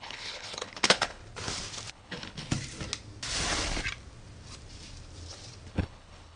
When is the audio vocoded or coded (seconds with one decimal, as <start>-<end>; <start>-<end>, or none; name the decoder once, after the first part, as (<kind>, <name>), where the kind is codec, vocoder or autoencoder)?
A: 0.0-1.2 (codec, HILCodec); 1.9-2.5; 5.7-6.4

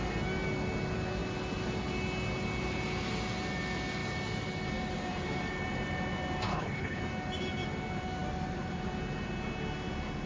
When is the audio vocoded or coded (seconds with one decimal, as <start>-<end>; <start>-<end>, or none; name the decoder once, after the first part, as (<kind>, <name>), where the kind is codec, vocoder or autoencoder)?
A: 6.5-7.0 (codec, HILCodec)

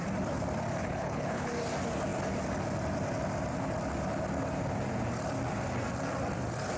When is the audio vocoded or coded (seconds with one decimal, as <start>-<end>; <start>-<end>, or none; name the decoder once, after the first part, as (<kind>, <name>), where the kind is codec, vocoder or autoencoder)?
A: 0.8-1.5 (codec, HILCodec)

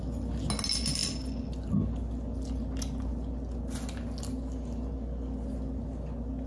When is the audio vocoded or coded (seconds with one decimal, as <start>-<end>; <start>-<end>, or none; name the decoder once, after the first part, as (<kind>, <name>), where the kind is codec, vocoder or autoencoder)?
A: none